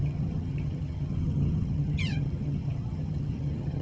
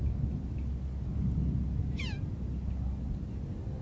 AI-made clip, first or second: first